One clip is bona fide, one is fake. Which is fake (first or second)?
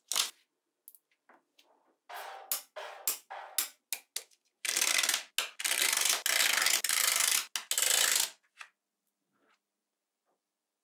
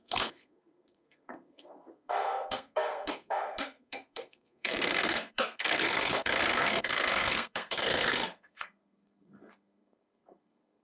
second